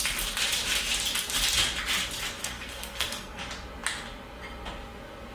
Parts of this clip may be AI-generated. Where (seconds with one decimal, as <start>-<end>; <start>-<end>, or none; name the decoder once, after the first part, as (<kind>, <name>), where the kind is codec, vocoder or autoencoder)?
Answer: 2.4-3.4 (codec, SNAC)